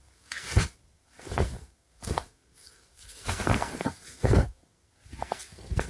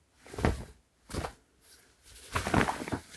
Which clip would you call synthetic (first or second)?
first